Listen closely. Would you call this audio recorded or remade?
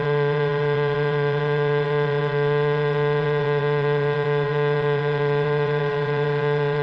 remade